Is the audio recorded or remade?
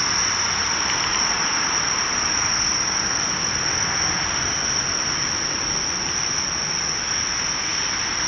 recorded